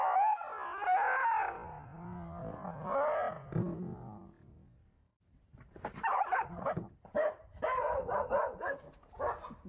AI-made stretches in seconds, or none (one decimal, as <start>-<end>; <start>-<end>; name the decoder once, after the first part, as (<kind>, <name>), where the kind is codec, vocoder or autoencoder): 3.9-8.3 (vocoder, BigVGAN v2)